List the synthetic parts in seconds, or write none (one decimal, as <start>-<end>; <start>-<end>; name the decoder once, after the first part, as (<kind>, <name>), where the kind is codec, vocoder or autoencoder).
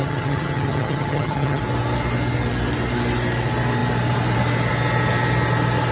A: 0.0-1.6 (vocoder, HiFi-GAN)